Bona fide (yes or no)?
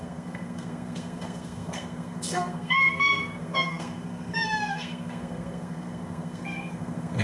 no